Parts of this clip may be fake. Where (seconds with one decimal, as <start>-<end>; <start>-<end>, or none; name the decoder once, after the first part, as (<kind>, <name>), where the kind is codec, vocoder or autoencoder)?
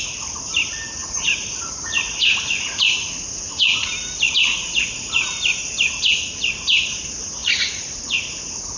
1.0-3.9 (vocoder, Vocos); 4.5-5.4; 7.4-8.3